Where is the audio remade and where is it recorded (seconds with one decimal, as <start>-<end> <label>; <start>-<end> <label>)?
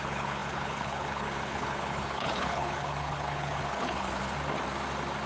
0.0-4.2 remade; 4.2-5.3 recorded